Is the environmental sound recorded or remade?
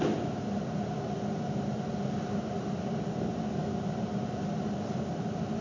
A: recorded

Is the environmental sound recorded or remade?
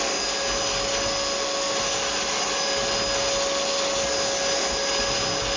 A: recorded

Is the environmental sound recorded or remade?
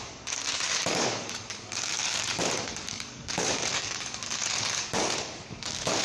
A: remade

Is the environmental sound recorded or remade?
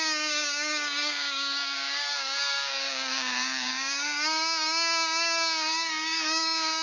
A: remade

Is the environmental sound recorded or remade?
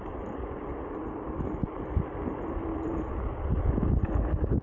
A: recorded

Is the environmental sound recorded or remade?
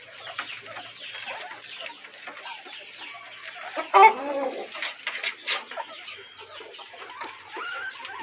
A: recorded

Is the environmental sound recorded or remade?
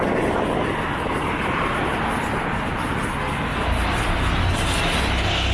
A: recorded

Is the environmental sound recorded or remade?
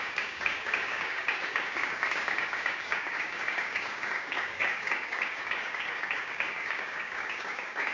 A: remade